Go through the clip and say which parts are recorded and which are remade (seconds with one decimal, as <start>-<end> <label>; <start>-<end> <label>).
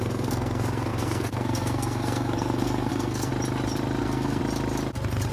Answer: 0.0-3.3 remade; 3.3-4.0 recorded; 4.0-4.4 remade; 4.4-5.3 recorded